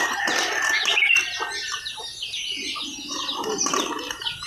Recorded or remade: recorded